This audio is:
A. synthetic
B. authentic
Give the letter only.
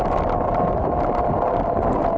B